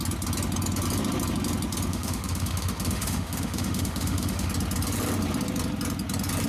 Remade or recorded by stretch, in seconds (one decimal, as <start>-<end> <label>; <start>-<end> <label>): 0.0-1.9 recorded; 1.9-4.5 remade; 4.5-6.5 recorded